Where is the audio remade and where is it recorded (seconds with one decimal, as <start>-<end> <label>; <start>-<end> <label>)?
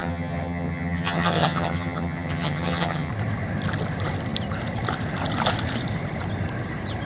0.0-3.1 remade; 3.1-7.0 recorded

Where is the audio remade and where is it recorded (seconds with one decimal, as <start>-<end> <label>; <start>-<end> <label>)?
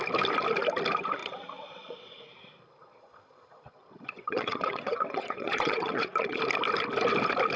0.0-1.2 recorded; 1.2-2.2 remade; 2.2-2.8 recorded; 2.8-6.4 remade; 6.4-7.6 recorded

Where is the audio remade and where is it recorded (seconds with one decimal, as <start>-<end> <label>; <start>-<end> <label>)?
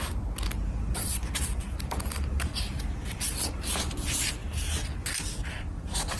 0.0-4.4 remade; 4.4-5.4 recorded; 5.4-6.2 remade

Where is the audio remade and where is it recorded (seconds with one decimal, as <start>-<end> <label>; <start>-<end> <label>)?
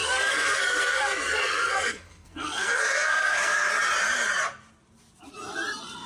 0.0-3.7 remade; 3.7-6.1 recorded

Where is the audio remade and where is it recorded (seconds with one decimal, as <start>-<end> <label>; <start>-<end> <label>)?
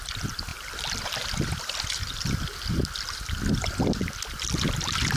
0.0-5.2 recorded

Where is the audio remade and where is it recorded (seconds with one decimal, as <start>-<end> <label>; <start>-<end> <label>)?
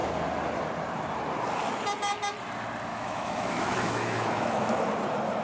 0.0-2.9 recorded; 2.9-4.9 remade; 4.9-5.4 recorded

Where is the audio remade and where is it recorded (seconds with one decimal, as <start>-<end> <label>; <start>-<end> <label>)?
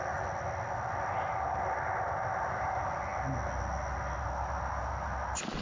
0.0-5.6 recorded